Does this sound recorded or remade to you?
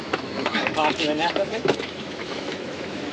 remade